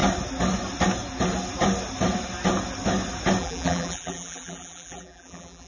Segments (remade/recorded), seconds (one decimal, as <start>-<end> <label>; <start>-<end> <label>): 0.0-3.4 recorded; 3.4-5.7 remade

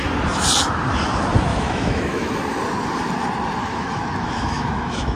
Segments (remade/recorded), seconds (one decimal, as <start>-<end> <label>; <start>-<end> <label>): 0.0-1.5 recorded; 1.5-2.3 remade; 2.3-3.6 recorded; 3.6-5.2 remade

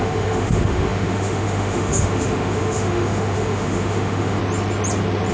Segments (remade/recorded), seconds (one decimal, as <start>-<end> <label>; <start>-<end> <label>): 0.0-4.4 remade; 4.4-5.3 recorded